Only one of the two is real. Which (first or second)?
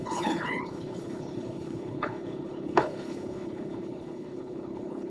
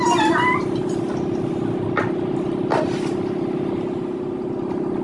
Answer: second